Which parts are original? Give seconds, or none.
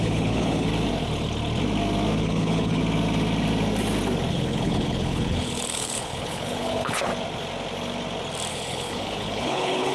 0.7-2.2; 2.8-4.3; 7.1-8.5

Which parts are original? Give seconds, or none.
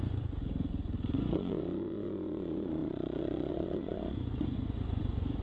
none